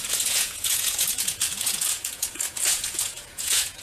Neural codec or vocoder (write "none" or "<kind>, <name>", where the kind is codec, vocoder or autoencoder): vocoder, Vocos